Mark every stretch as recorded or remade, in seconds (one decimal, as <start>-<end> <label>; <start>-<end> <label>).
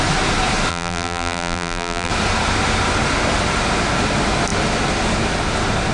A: 0.0-0.7 recorded; 0.7-2.1 remade; 2.1-5.9 recorded